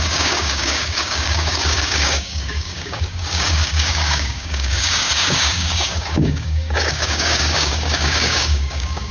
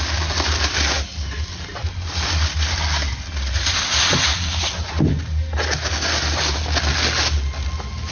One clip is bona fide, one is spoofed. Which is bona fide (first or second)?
second